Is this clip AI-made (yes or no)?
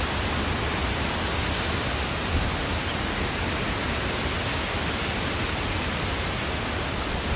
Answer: no